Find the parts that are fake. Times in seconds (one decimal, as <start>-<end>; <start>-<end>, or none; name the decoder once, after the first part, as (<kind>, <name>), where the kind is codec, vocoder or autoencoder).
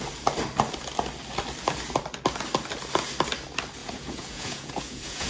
3.8-5.3 (vocoder, Vocos)